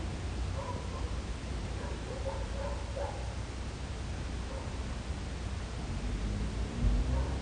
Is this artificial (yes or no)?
no